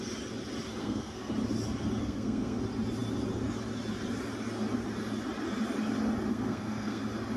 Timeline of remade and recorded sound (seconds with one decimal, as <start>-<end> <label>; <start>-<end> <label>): 0.0-0.8 recorded; 0.8-1.3 remade; 1.3-2.0 recorded; 2.0-2.6 remade; 2.6-6.3 recorded; 6.3-7.0 remade; 7.0-7.4 recorded